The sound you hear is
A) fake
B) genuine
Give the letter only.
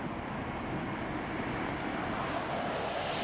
B